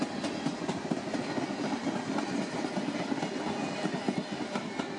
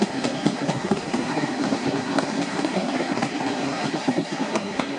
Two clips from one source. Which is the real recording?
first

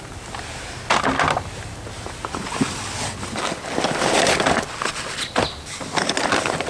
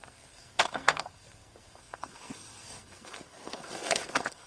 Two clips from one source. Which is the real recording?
first